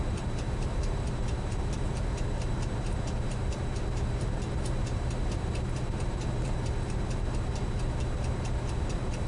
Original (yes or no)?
no